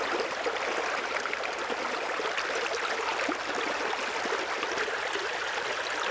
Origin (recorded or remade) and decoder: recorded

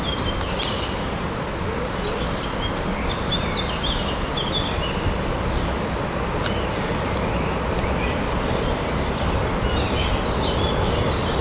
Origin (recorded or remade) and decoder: recorded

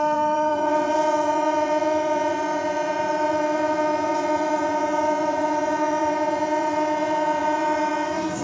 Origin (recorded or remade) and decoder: remade, vocoder, Vocos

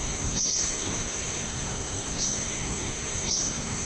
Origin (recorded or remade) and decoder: remade, codec, SNAC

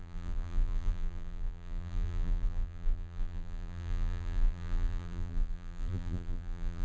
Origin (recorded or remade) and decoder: remade, vocoder, BigVGAN v2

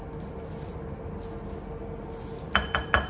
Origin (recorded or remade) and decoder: recorded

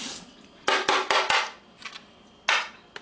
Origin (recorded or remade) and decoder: recorded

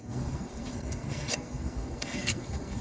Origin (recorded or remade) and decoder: remade, codec, SNAC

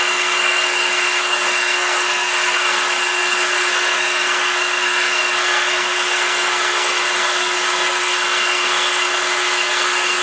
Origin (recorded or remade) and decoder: remade, codec, SNAC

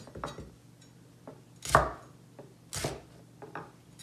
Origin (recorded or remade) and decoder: recorded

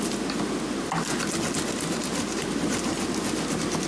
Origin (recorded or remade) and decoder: recorded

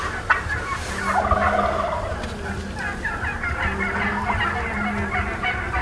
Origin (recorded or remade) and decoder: recorded